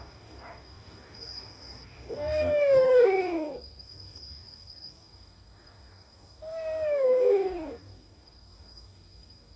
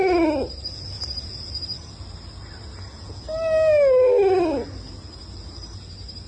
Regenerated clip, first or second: first